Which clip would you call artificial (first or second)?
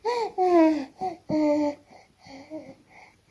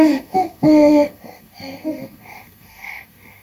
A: second